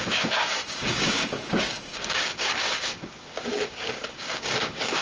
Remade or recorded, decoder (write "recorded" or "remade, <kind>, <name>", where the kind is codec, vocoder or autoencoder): remade, codec, DAC